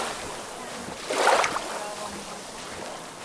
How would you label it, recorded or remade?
recorded